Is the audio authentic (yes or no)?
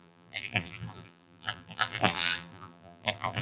no